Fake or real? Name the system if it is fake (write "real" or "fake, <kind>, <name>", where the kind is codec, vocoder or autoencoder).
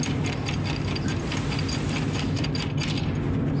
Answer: real